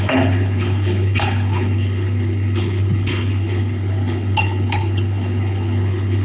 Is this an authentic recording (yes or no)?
no